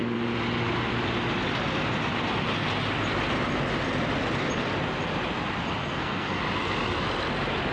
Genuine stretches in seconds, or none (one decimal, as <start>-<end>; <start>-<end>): 0.0-5.8; 6.4-7.7